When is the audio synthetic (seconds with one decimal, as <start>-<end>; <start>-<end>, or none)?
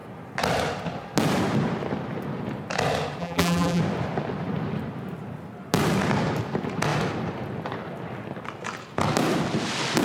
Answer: 3.2-3.8